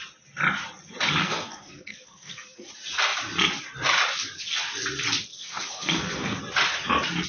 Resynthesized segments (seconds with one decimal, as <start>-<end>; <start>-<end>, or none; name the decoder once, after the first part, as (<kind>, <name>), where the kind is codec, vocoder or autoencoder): 1.2-2.7 (codec, SNAC); 5.3-6.4

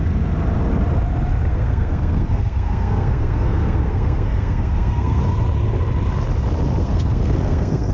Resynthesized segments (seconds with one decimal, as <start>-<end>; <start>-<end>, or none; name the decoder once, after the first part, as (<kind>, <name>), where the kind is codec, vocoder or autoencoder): 1.5-5.2 (codec, SNAC); 6.8-7.9

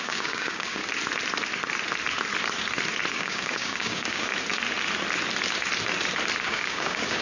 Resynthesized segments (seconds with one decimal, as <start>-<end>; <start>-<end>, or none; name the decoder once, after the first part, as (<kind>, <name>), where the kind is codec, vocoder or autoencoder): 0.0-0.8 (codec, DAC); 3.1-4.3; 6.4-7.2

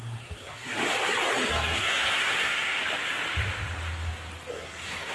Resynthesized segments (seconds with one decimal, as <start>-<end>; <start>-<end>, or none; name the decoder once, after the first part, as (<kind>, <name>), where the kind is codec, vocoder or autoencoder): 0.0-0.8 (codec, SNAC); 1.5-2.8; 4.5-5.1

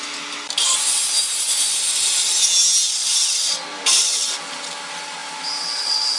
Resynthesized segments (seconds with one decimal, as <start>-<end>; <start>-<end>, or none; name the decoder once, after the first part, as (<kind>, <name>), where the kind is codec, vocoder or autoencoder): none

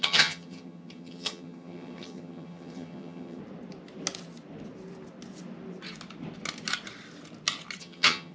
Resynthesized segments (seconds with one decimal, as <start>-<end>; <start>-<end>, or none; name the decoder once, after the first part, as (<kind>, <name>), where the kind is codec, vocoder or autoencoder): 0.0-3.4 (vocoder, HiFi-GAN); 7.8-8.3

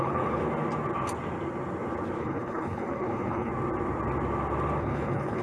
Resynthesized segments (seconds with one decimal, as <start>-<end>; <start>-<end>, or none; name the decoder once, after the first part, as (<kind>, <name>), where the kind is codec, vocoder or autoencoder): 0.0-0.4 (codec, HILCodec); 2.2-3.5; 4.8-5.4

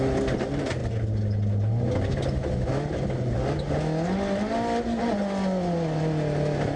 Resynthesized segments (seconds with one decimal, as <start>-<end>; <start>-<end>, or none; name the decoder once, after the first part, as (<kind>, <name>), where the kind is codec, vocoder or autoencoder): none